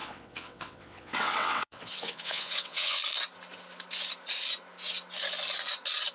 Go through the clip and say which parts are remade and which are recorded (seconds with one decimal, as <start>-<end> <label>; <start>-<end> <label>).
0.0-3.0 remade; 3.0-6.1 recorded